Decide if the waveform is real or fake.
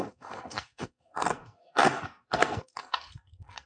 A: fake